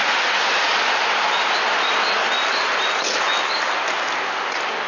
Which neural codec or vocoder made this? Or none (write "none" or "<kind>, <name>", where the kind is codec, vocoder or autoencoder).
none